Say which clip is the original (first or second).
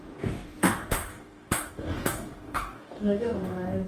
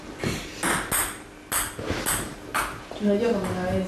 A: second